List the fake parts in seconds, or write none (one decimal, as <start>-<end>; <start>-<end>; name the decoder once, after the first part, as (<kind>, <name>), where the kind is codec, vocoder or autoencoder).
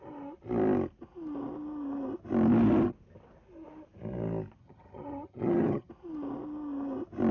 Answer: 4.6-5.9 (vocoder, HiFi-GAN)